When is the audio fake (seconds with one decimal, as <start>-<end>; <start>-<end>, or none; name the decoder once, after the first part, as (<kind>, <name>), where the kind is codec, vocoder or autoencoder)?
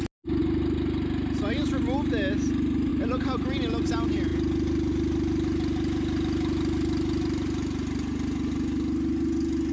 none